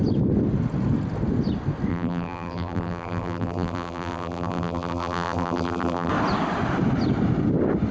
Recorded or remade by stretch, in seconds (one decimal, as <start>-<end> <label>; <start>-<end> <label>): 0.0-1.9 recorded; 1.9-6.1 remade; 6.1-7.9 recorded